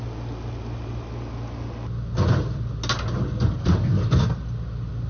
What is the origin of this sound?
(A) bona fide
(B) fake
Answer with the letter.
A